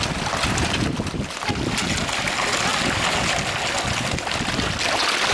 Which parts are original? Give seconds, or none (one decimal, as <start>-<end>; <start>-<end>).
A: 0.0-5.3